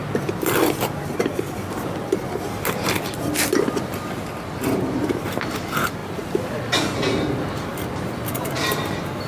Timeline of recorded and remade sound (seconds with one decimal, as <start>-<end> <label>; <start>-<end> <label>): 0.0-1.3 remade; 1.3-6.0 recorded; 6.0-9.3 remade